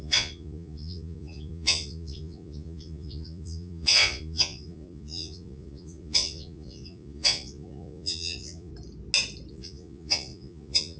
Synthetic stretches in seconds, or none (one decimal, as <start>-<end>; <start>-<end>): 0.0-8.7; 9.5-11.0